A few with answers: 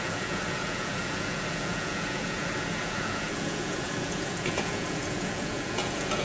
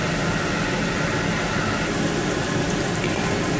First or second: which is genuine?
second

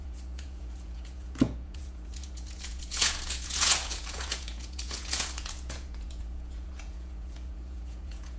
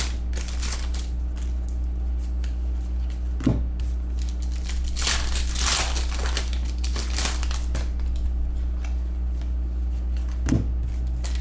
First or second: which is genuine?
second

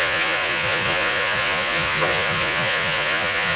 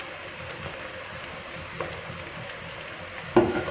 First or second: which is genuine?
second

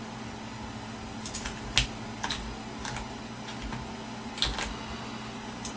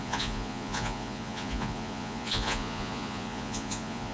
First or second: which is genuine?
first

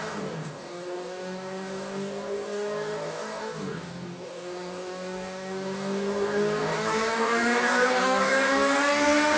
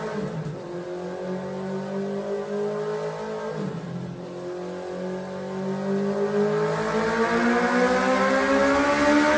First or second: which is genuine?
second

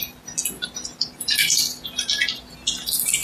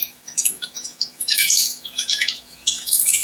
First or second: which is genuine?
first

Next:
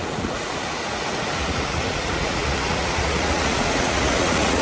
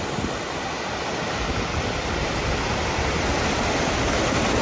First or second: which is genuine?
second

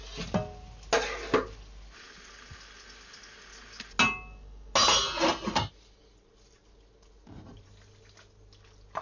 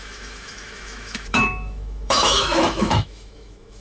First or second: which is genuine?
first